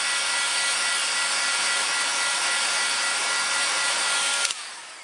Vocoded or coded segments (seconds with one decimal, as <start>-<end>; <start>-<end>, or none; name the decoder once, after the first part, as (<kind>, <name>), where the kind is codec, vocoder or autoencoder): 4.3-5.0 (codec, DAC)